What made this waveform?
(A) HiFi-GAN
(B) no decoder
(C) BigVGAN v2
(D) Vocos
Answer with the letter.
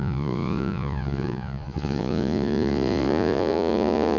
D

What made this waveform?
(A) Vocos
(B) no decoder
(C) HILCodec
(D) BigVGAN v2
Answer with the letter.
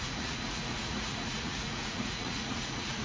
A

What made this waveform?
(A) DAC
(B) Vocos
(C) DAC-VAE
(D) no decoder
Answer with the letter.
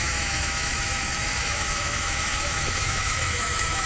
C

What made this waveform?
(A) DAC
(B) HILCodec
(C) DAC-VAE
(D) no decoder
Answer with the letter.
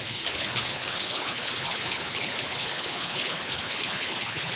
B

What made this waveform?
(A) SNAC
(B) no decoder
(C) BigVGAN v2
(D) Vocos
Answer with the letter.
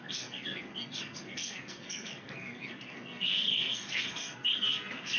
A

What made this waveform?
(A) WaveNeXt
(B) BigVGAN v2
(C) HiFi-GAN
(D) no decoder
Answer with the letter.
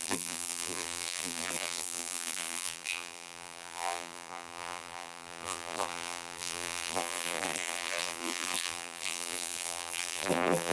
B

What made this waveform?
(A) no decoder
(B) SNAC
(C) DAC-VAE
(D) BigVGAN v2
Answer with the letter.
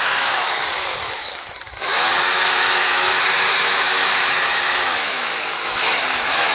C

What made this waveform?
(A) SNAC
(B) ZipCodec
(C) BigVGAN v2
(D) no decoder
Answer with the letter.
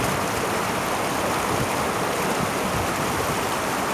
D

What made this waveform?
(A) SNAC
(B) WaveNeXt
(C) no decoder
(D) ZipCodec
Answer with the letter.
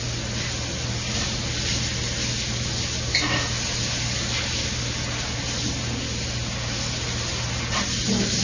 C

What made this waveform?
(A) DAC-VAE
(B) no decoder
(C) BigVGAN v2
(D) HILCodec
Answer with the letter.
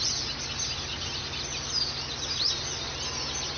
B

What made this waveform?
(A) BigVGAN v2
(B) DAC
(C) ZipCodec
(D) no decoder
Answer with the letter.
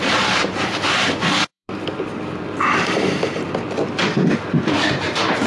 A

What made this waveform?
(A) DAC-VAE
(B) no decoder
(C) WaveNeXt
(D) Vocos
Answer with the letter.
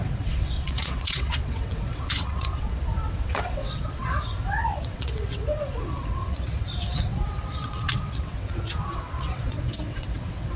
C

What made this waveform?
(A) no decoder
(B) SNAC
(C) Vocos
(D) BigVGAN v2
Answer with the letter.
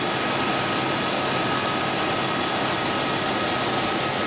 A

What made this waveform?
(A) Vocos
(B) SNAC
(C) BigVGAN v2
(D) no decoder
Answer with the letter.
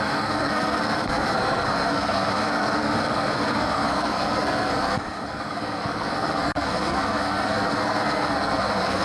B